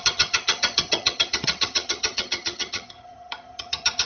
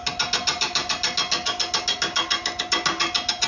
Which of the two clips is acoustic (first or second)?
second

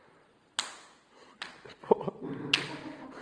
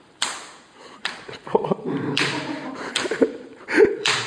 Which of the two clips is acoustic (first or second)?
first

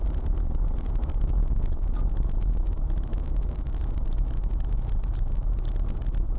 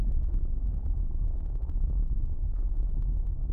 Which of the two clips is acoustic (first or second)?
first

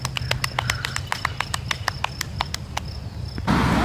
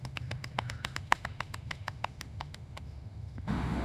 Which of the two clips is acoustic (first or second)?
first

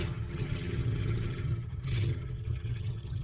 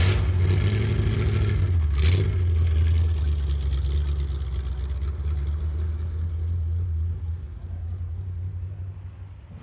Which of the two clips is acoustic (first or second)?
second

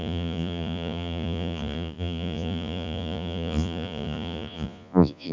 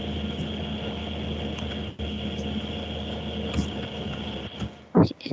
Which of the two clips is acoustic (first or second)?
second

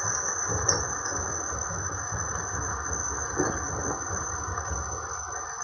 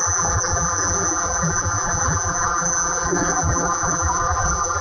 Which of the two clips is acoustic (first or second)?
first